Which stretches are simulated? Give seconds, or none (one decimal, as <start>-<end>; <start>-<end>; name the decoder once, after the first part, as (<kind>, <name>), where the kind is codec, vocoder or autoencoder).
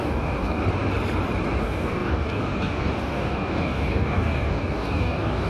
0.0-0.6 (codec, DAC); 1.6-5.5